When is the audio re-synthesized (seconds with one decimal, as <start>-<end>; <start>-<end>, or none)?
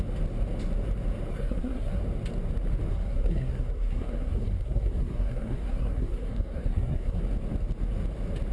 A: 1.3-2.0; 2.9-7.2